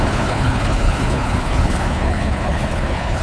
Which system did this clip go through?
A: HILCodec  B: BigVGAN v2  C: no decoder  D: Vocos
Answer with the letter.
A